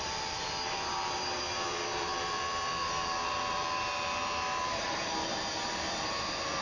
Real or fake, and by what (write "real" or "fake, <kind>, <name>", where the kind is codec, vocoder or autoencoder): fake, vocoder, BigVGAN v2